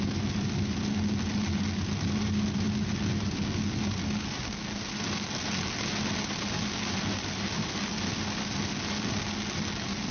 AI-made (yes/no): no